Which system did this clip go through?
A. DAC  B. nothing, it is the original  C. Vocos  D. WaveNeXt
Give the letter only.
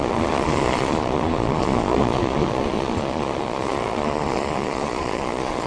C